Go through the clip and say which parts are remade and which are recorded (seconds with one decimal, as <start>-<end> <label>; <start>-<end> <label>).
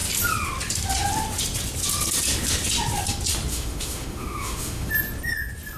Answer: 0.0-3.5 recorded; 3.5-4.9 remade; 4.9-5.8 recorded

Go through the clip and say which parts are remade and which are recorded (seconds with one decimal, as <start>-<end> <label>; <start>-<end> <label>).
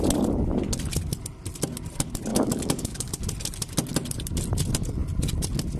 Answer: 0.0-2.3 recorded; 2.3-3.1 remade; 3.1-5.8 recorded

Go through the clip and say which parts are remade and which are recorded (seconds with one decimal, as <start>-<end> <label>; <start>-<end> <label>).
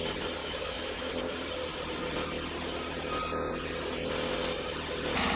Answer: 0.0-0.4 recorded; 0.4-1.1 remade; 1.1-5.4 recorded